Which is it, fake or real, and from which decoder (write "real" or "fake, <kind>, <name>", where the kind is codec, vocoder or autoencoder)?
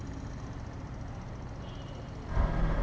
real